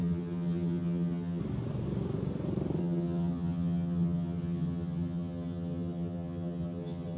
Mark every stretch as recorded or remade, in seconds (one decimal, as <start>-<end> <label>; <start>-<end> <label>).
0.0-1.4 remade; 1.4-2.8 recorded; 2.8-7.2 remade